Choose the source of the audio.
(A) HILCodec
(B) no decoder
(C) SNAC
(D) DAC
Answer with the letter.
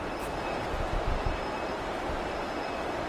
B